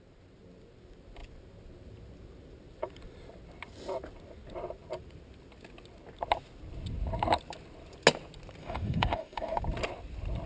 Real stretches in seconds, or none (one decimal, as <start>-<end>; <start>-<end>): 0.0-8.6; 9.6-10.5